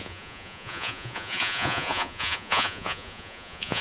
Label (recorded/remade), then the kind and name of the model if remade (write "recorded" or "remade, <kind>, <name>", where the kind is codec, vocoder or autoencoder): remade, vocoder, Vocos